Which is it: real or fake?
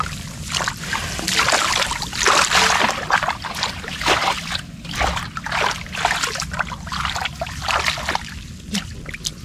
real